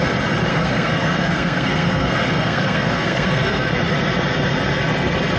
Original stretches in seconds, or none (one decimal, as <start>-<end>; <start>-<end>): 0.0-0.5; 3.7-5.4